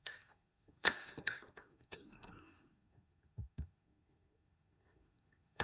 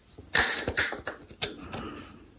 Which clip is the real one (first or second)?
second